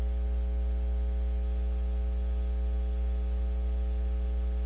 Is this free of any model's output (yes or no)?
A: yes